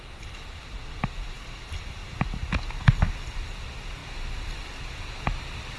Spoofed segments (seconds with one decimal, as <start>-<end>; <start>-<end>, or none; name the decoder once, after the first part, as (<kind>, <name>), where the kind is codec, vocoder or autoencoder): none